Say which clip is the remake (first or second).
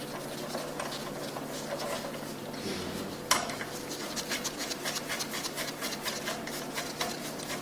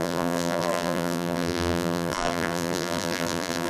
second